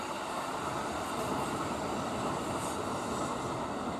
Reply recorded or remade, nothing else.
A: recorded